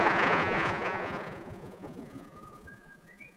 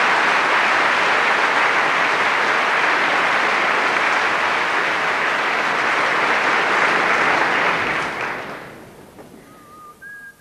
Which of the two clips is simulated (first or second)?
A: first